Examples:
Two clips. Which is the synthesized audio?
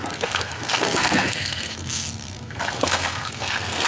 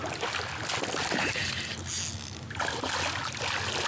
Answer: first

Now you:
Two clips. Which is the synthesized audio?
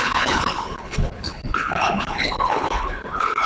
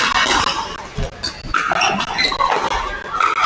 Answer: first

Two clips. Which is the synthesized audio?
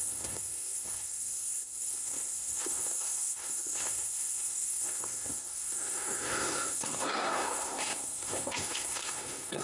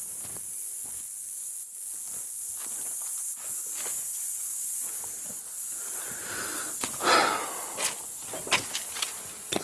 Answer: first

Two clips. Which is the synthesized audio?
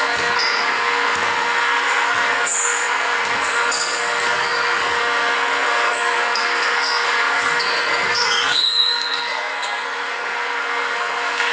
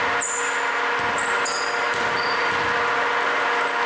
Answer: first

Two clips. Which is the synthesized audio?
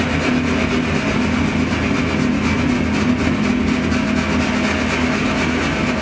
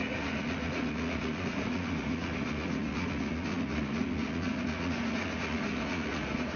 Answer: second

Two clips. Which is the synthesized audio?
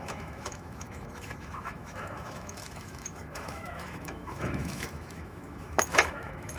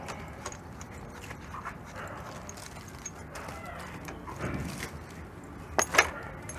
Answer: first